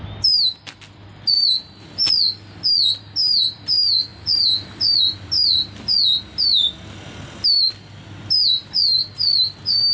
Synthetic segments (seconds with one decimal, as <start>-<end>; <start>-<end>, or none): none